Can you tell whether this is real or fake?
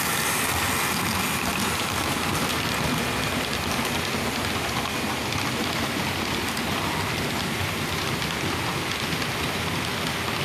real